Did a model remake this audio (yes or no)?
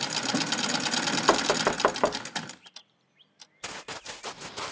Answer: no